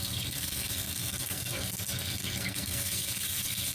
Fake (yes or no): yes